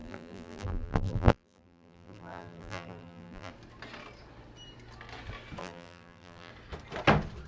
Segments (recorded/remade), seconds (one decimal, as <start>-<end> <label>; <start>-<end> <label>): 0.0-3.5 remade; 3.5-5.6 recorded; 5.6-6.5 remade; 6.5-7.5 recorded